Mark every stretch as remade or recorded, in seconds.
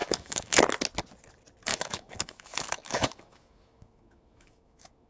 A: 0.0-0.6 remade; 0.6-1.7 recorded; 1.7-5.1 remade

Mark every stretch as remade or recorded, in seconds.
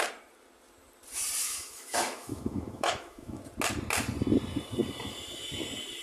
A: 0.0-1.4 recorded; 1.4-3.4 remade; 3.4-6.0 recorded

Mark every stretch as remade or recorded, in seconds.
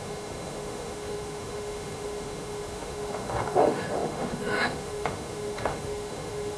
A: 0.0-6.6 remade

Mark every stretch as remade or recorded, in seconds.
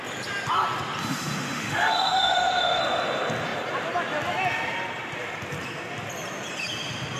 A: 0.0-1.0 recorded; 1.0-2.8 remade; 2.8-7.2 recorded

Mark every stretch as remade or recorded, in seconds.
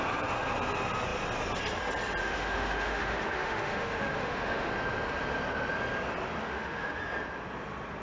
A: 0.0-2.2 recorded; 2.2-4.7 remade; 4.7-6.4 recorded; 6.4-7.0 remade; 7.0-8.0 recorded